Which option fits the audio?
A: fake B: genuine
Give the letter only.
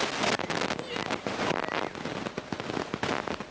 B